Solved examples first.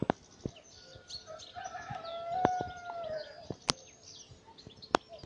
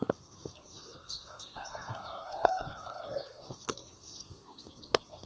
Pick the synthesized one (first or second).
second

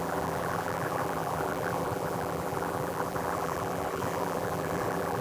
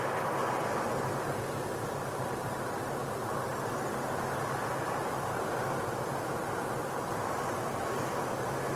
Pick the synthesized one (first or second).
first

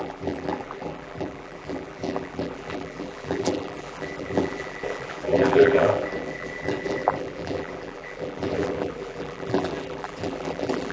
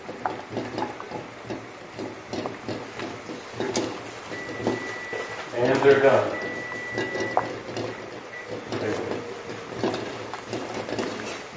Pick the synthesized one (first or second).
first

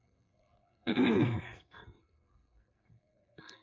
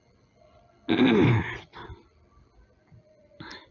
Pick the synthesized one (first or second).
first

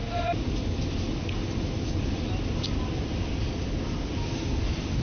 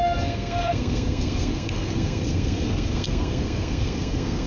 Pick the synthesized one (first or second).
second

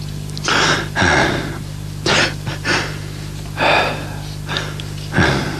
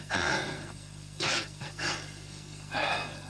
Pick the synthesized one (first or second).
second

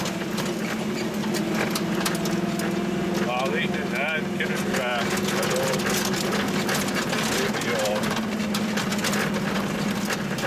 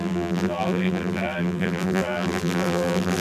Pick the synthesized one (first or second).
second